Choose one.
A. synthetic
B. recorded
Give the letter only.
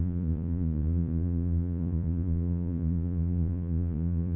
A